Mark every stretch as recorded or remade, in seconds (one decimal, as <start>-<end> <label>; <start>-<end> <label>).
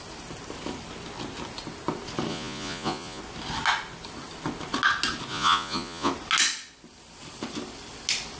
0.0-2.3 recorded; 2.3-3.2 remade; 3.2-5.3 recorded; 5.3-6.1 remade; 6.1-8.4 recorded